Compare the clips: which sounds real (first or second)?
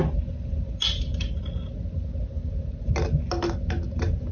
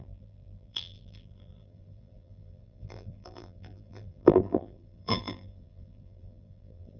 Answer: first